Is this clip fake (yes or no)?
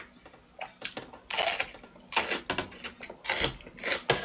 no